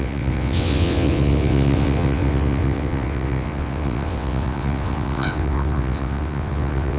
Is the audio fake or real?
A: fake